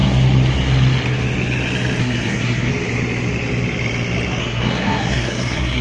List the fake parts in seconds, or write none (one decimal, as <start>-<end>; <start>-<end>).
2.0-2.7; 4.4-5.8